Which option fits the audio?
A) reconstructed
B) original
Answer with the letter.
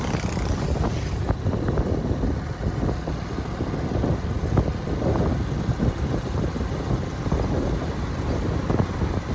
B